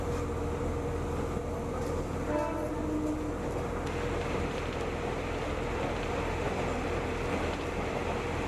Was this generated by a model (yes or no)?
no